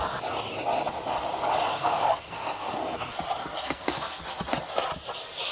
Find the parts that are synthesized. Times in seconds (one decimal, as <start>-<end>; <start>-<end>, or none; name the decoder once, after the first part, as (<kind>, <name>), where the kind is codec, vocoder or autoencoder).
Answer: 1.7-2.8 (codec, SNAC); 3.6-4.2